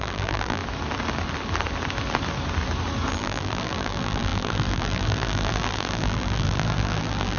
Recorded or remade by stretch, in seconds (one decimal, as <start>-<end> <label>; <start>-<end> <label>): 0.0-0.6 remade; 0.6-3.1 recorded; 3.1-7.4 remade